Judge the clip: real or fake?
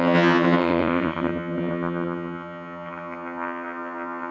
fake